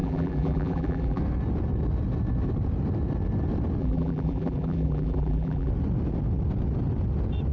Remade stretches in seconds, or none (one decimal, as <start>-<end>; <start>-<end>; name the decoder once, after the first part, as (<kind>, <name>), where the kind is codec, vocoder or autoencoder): 0.0-1.2 (vocoder, BigVGAN v2); 3.8-5.7